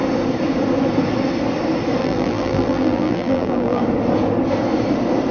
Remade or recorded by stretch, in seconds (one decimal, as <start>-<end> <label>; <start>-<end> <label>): 0.0-2.0 recorded; 2.0-3.8 remade; 3.8-5.3 recorded

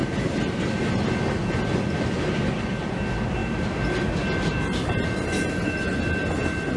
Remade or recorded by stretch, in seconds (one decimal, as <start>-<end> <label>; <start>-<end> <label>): 0.0-0.6 remade; 0.6-6.8 recorded

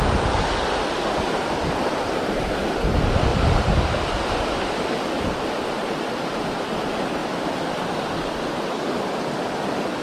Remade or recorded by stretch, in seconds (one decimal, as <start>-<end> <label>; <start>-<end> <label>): 0.0-10.0 recorded